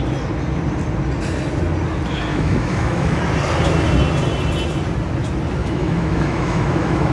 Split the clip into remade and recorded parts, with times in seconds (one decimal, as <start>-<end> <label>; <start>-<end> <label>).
0.0-2.3 recorded; 2.3-3.2 remade; 3.2-5.6 recorded; 5.6-7.1 remade